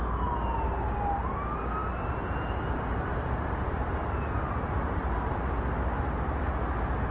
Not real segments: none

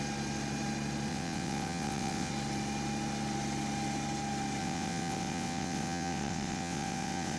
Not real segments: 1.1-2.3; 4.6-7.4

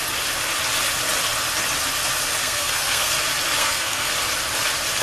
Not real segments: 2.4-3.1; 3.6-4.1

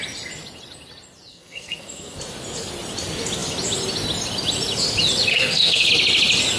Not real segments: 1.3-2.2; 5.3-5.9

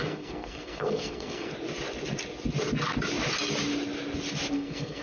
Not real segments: 0.0-1.5; 4.5-5.0

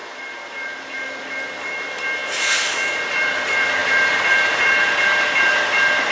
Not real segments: 0.0-2.2; 2.7-6.1